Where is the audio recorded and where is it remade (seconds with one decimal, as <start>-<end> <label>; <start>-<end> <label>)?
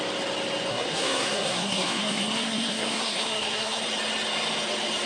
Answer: 0.0-0.7 recorded; 0.7-3.8 remade; 3.8-5.1 recorded